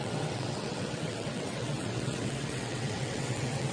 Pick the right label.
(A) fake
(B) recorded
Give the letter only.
A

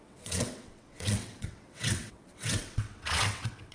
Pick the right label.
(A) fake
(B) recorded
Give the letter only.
A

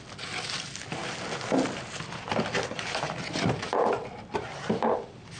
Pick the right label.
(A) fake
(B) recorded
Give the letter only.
B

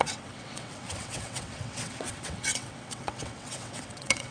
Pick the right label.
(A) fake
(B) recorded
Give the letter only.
A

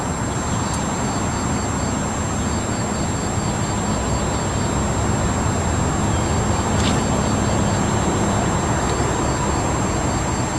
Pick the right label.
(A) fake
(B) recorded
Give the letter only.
B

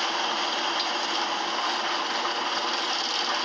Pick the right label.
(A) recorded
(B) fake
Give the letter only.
A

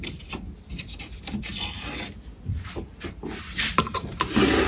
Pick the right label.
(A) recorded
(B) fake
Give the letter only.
A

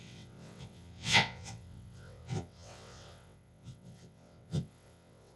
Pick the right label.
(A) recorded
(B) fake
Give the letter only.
B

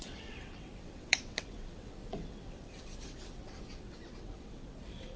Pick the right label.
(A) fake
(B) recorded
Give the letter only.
A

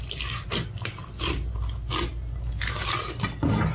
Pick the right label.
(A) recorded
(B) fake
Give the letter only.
A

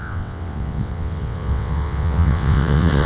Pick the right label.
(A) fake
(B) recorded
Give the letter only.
A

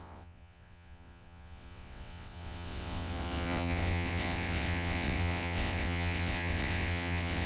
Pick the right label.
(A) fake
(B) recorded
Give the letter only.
A